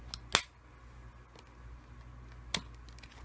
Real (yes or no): yes